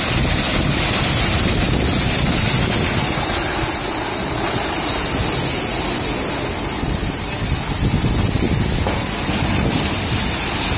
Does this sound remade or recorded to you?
recorded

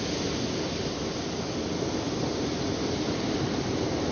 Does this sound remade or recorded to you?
recorded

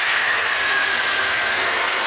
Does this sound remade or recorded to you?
remade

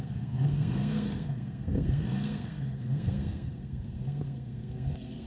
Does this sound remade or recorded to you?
remade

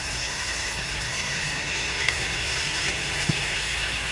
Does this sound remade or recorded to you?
remade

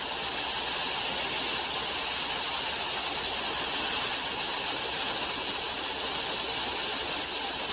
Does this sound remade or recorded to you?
recorded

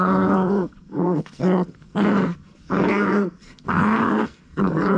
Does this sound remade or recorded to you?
remade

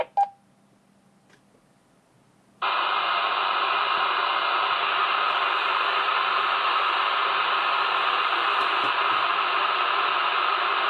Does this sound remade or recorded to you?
recorded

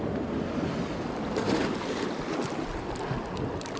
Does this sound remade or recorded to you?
recorded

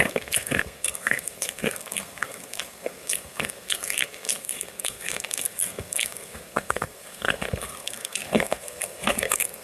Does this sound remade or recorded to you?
remade